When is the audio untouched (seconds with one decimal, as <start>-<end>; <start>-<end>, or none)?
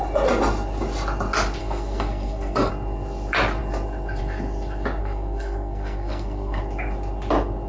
0.0-1.6; 2.7-5.0; 6.6-7.7